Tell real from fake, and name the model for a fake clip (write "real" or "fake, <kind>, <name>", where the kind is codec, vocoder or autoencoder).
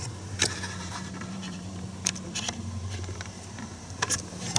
fake, vocoder, BigVGAN v2